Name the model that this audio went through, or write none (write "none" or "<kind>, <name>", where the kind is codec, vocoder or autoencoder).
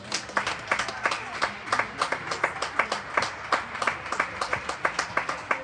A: none